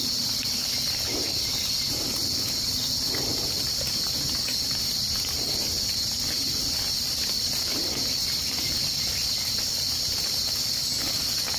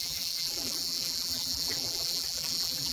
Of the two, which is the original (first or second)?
first